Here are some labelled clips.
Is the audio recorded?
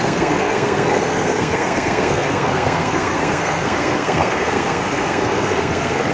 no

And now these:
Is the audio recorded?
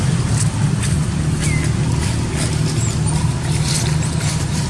yes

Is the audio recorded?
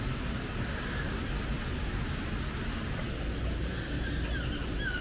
no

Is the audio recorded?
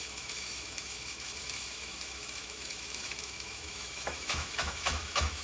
no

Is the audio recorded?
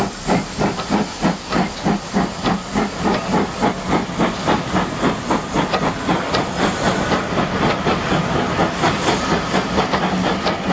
yes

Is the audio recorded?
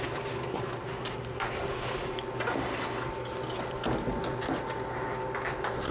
yes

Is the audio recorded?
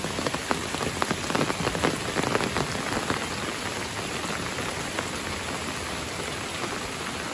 yes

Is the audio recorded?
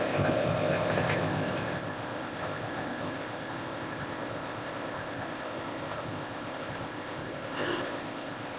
no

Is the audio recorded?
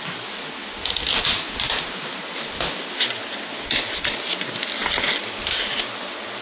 yes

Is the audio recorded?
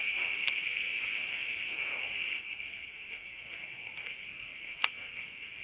no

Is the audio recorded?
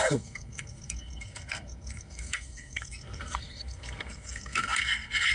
no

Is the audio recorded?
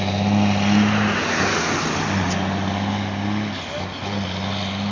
yes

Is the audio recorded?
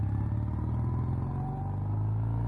yes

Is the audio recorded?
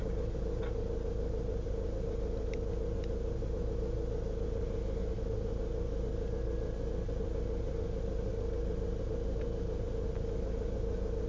yes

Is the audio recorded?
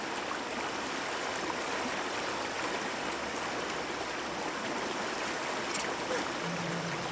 yes